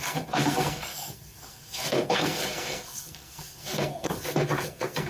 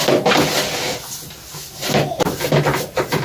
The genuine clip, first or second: second